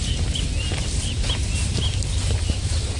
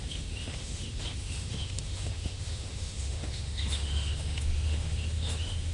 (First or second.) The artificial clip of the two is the second